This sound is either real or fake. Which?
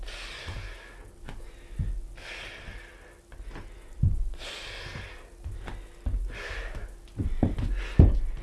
real